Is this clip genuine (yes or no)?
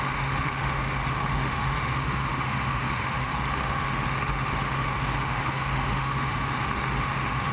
no